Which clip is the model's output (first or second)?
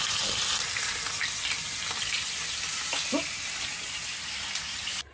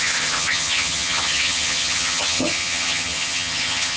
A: second